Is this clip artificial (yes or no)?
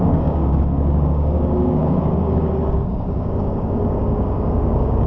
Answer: yes